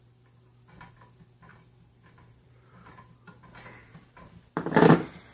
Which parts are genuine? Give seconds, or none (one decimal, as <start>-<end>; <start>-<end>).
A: 0.0-1.5; 4.7-5.3